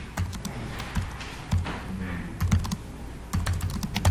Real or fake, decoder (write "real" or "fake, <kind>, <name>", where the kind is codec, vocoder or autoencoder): real